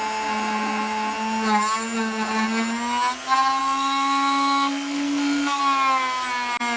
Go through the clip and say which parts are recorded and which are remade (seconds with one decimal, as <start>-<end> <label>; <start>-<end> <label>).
0.0-3.6 recorded; 3.6-5.6 remade; 5.6-6.8 recorded